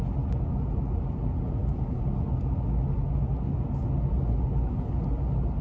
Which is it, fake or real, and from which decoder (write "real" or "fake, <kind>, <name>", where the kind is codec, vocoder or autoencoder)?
real